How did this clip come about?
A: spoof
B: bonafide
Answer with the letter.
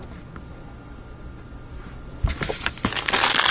B